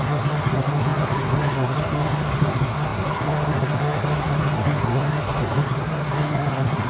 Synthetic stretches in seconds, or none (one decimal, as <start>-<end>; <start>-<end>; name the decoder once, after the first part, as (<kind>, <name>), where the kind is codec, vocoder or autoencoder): 0.0-6.9 (codec, SNAC)